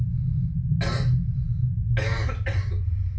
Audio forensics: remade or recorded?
recorded